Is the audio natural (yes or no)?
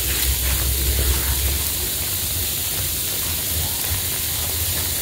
yes